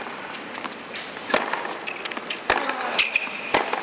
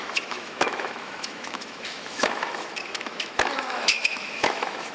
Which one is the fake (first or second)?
second